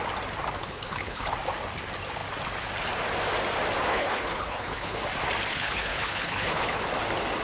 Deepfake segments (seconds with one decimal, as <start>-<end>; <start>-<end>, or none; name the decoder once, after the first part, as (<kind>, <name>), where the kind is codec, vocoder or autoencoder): 0.6-1.3 (codec, HILCodec); 3.9-5.0; 5.5-6.8